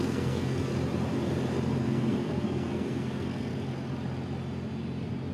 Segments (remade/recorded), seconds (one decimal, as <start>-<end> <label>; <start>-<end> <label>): 0.0-0.7 remade; 0.7-1.8 recorded; 1.8-3.5 remade; 3.5-5.3 recorded